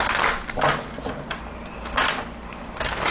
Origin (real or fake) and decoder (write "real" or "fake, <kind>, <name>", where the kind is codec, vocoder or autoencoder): real